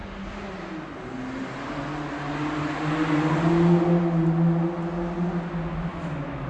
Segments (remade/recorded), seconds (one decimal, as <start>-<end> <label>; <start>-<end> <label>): 0.0-5.9 recorded; 5.9-6.5 remade